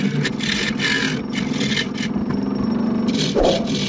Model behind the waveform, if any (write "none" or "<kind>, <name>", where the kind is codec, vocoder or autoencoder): none